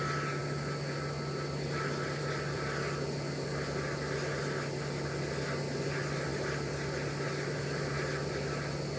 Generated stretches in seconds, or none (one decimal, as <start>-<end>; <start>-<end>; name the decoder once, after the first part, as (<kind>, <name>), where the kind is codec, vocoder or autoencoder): none